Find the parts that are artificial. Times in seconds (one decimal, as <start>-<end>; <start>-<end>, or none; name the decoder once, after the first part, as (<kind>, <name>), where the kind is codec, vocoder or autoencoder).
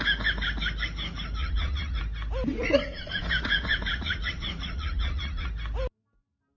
1.4-2.0 (vocoder, Vocos); 2.5-5.5